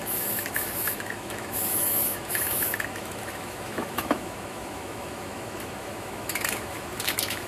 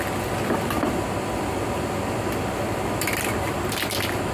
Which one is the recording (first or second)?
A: second